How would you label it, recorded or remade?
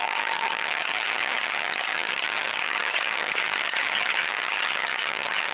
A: remade